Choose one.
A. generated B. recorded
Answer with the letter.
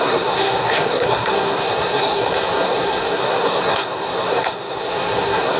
A